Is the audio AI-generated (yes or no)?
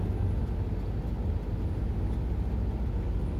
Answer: no